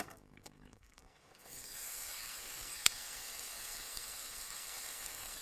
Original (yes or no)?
no